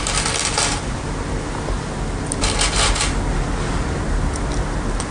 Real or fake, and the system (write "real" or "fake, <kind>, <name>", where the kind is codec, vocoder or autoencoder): real